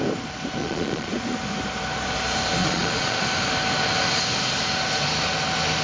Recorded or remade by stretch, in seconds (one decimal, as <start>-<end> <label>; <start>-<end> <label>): 0.0-0.6 recorded; 0.6-1.1 remade; 1.1-2.6 recorded; 2.6-3.2 remade; 3.2-5.8 recorded